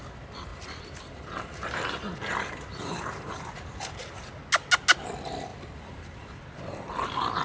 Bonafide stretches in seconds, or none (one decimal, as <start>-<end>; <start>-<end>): 0.0-0.5; 4.2-5.5; 6.4-7.4